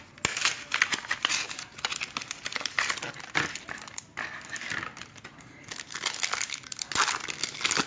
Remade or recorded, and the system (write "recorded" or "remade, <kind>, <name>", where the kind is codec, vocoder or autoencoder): recorded